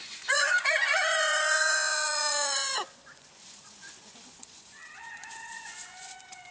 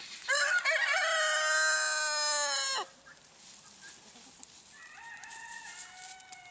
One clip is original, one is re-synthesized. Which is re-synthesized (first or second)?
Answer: first